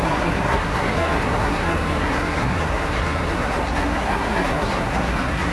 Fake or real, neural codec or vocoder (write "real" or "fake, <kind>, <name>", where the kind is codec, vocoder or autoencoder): fake, codec, SNAC